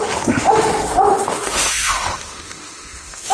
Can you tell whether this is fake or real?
fake